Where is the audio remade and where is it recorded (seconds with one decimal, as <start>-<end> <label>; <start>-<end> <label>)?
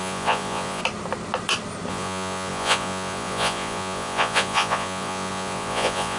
0.0-0.8 remade; 0.8-1.9 recorded; 1.9-6.2 remade